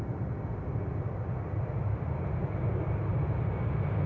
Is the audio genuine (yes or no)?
yes